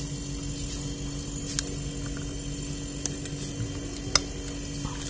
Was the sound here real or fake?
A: real